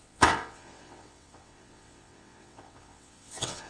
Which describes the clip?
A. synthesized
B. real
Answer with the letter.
A